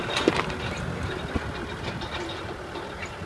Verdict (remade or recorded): recorded